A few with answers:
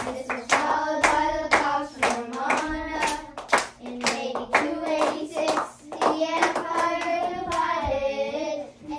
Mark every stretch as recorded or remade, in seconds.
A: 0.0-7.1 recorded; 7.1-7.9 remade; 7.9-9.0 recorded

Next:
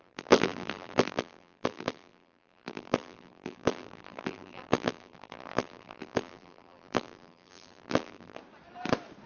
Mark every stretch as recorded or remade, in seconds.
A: 0.0-8.4 remade; 8.4-9.3 recorded

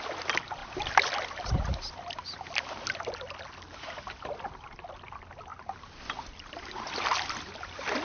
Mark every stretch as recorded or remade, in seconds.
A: 0.0-0.6 recorded; 0.6-1.5 remade; 1.5-5.5 recorded; 5.5-6.6 remade; 6.6-8.0 recorded

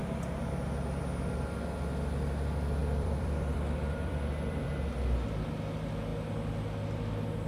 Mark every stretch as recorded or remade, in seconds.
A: 0.0-2.8 recorded; 2.8-4.7 remade; 4.7-7.5 recorded